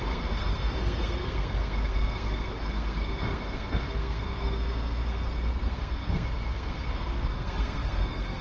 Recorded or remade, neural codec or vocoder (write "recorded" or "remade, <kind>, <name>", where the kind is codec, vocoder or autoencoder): remade, codec, SNAC